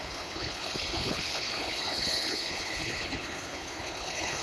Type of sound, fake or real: fake